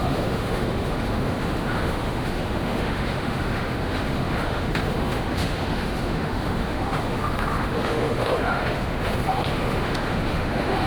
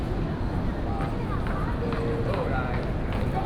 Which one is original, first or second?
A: second